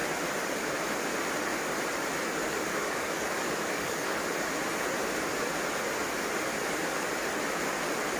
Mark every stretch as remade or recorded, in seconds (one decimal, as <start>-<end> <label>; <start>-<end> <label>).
0.0-2.4 recorded; 2.4-4.2 remade; 4.2-8.2 recorded